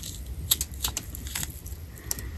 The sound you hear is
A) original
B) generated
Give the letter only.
A